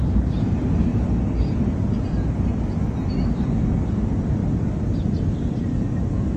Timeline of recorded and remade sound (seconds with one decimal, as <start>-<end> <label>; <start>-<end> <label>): 0.0-6.4 recorded